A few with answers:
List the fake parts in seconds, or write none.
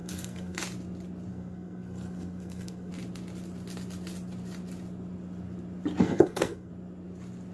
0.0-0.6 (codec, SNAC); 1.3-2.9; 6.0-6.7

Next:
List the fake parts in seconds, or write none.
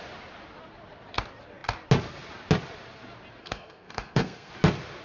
3.4-4.5 (codec, SNAC)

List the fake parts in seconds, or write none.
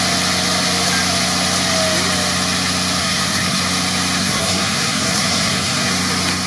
3.0-3.6 (codec, SNAC); 4.2-5.9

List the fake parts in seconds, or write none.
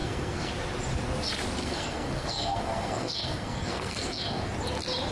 0.0-0.5 (codec, SNAC); 1.6-4.5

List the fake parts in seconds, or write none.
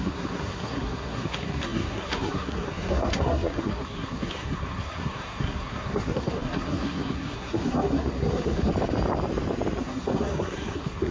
0.0-8.7 (codec, SNAC); 9.8-11.1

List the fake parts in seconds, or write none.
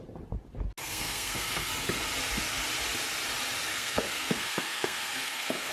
0.8-1.7 (codec, SNAC); 3.7-5.7